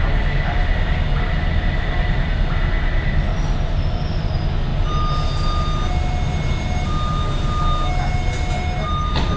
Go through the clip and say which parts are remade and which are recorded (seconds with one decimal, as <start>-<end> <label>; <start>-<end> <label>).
0.0-9.4 recorded